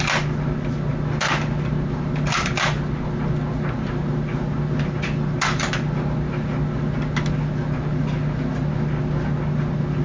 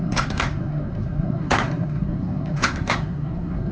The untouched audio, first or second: first